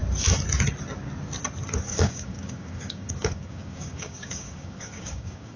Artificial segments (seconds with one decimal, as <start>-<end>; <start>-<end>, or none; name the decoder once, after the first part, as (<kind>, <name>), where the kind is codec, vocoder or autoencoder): 1.9-5.6 (codec, DAC)